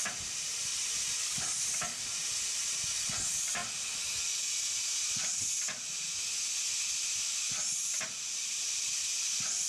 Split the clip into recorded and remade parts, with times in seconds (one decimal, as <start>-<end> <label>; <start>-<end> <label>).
0.0-1.2 recorded; 1.2-2.0 remade; 2.0-9.7 recorded

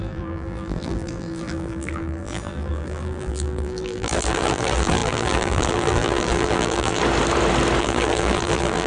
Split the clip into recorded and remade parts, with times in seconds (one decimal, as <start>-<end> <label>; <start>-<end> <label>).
0.0-7.0 remade; 7.0-7.8 recorded; 7.8-8.9 remade

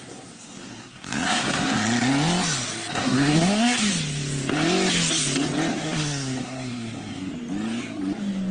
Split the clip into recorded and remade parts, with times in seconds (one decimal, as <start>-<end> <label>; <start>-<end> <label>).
0.0-1.8 remade; 1.8-2.9 recorded; 2.9-3.9 remade; 3.9-5.7 recorded; 5.7-7.3 remade; 7.3-8.5 recorded

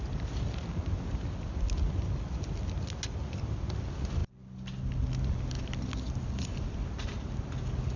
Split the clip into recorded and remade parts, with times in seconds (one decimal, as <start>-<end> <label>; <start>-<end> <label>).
0.0-4.2 recorded; 4.2-7.1 remade; 7.1-8.0 recorded

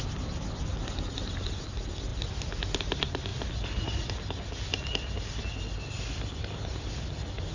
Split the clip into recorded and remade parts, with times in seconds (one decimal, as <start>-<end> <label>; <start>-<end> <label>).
0.0-2.1 recorded; 2.1-2.8 remade; 2.8-3.3 recorded; 3.3-5.4 remade; 5.4-7.5 recorded